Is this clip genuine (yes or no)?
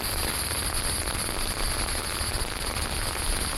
yes